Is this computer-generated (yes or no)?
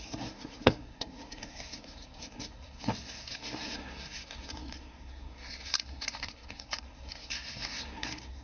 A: yes